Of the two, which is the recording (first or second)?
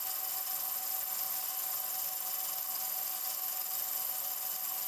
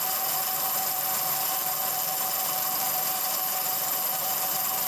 first